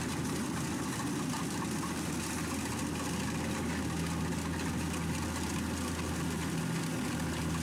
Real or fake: real